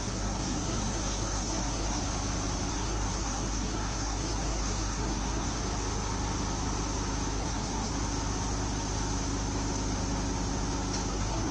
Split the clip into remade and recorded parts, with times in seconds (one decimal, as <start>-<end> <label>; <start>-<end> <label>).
0.0-2.0 remade; 2.0-2.7 recorded; 2.7-5.6 remade; 5.6-7.4 recorded; 7.4-7.9 remade; 7.9-11.1 recorded; 11.1-11.5 remade